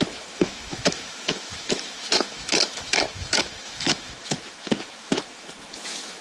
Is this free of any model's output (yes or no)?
no